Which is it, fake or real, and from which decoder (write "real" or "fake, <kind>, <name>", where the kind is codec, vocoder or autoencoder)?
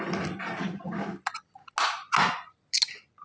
real